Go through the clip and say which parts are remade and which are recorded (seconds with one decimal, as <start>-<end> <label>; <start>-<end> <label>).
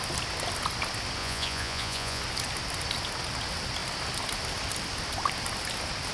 0.0-1.2 recorded; 1.2-2.2 remade; 2.2-6.1 recorded